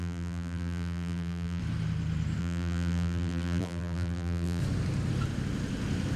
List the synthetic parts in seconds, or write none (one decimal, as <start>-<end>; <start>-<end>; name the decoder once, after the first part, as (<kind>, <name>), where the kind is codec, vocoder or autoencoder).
0.0-1.6 (vocoder, BigVGAN v2); 2.4-4.6